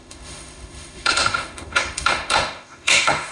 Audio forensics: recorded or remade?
remade